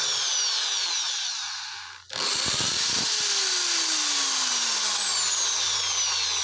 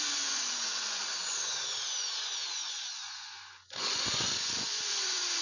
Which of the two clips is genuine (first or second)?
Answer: first